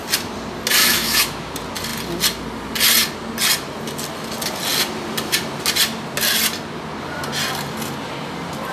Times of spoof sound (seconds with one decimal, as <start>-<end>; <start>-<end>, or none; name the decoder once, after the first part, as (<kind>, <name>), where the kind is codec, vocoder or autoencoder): 0.8-1.5 (autoencoder, DAC-VAE)